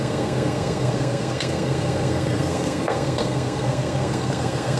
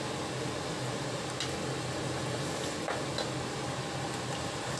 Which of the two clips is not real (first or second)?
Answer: first